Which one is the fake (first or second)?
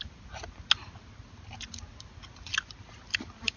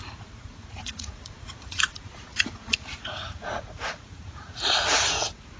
second